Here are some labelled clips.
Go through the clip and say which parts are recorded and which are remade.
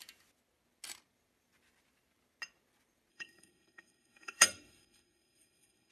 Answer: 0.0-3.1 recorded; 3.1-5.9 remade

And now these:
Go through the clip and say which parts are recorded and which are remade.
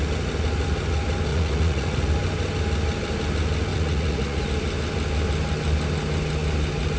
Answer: 0.0-1.3 recorded; 1.3-2.1 remade; 2.1-3.7 recorded; 3.7-4.4 remade; 4.4-7.0 recorded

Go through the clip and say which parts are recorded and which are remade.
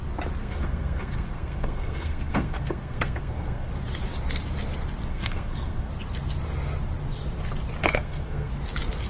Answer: 0.0-0.4 recorded; 0.4-3.7 remade; 3.7-5.1 recorded; 5.1-5.9 remade; 5.9-7.8 recorded; 7.8-8.5 remade; 8.5-9.1 recorded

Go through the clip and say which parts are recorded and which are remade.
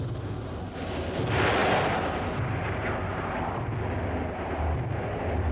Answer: 0.0-5.5 recorded